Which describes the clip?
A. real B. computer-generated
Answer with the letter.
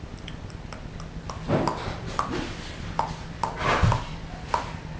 A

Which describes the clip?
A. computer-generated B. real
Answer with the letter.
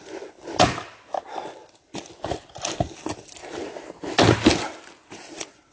B